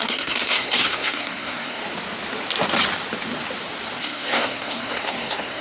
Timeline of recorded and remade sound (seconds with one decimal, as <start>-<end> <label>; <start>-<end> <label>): 0.0-1.8 remade; 1.8-4.0 recorded; 4.0-5.6 remade